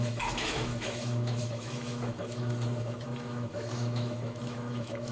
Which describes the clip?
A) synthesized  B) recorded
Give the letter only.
A